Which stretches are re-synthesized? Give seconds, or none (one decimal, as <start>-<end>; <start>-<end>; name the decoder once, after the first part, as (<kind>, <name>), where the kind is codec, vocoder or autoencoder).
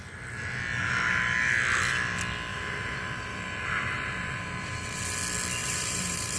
2.5-5.0 (vocoder, BigVGAN v2); 5.6-6.4